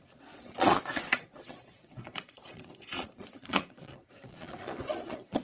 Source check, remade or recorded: remade